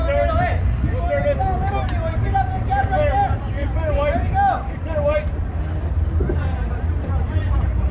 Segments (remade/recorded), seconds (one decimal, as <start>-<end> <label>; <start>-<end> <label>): 0.0-7.9 recorded